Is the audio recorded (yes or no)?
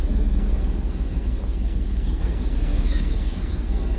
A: no